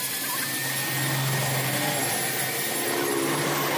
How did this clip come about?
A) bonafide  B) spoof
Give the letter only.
A